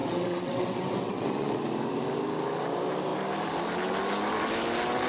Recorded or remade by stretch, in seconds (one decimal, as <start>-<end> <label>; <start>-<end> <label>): 0.0-1.5 remade; 1.5-5.1 recorded